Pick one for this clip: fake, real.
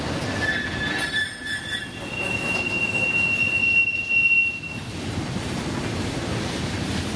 real